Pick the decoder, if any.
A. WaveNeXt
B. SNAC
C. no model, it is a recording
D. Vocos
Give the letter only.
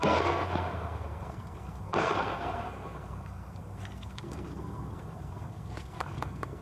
B